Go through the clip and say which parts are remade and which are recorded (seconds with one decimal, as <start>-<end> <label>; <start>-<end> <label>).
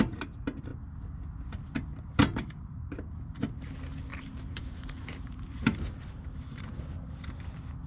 0.0-2.2 recorded; 2.2-3.0 remade; 3.0-4.1 recorded; 4.1-6.6 remade; 6.6-7.9 recorded